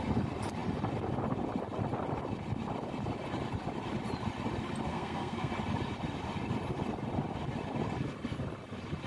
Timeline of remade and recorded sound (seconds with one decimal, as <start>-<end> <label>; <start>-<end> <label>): 0.0-4.9 recorded; 4.9-5.5 remade; 5.5-9.1 recorded